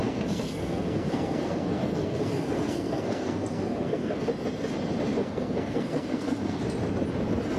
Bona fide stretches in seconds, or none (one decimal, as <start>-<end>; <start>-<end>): 4.3-5.2; 6.6-7.6